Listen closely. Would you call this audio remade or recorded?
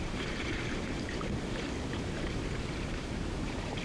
remade